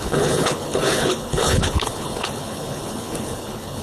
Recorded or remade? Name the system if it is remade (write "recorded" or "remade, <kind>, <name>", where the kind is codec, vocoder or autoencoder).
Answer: remade, codec, HILCodec